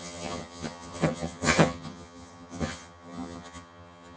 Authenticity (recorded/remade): remade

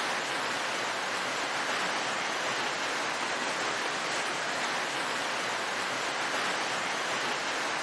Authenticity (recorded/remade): recorded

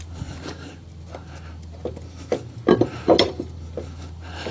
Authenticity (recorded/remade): recorded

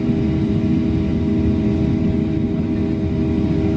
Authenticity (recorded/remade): recorded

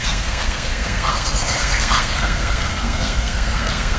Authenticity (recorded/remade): remade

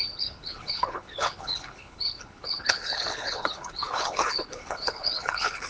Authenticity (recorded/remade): remade